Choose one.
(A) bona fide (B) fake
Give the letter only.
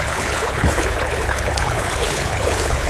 B